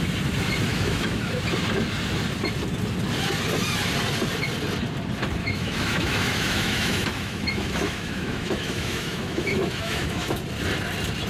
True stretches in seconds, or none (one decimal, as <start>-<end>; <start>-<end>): 0.0-0.7; 1.4-5.4; 10.4-11.3